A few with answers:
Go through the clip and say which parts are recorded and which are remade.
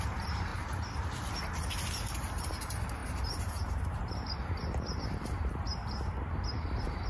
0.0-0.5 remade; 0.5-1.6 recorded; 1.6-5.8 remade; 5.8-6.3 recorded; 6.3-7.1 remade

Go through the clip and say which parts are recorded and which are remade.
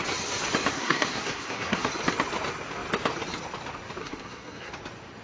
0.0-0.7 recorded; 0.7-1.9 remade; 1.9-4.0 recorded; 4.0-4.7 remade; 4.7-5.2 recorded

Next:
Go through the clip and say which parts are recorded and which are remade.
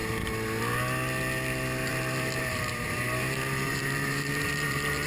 0.0-1.9 recorded; 1.9-5.1 remade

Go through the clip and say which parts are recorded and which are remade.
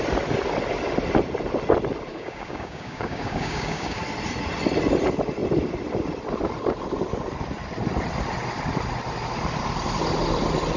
0.0-2.1 recorded; 2.1-4.0 remade; 4.0-10.8 recorded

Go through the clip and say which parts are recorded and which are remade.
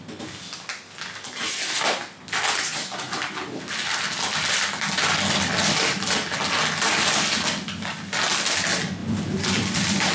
0.0-9.0 recorded; 9.0-10.1 remade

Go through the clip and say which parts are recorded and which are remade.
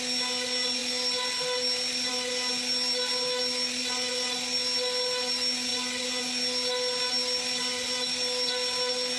0.0-9.2 recorded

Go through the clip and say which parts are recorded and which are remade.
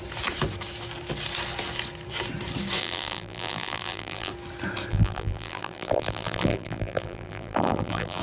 0.0-2.8 recorded; 2.8-4.3 remade; 4.3-4.9 recorded; 4.9-8.2 remade